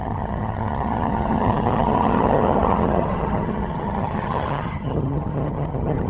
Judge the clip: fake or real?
fake